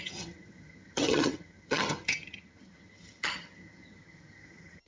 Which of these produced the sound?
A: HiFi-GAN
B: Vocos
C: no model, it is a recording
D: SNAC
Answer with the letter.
A